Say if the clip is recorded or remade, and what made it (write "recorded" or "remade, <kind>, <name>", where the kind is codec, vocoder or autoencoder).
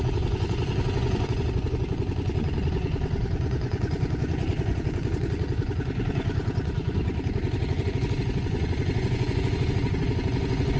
remade, vocoder, Vocos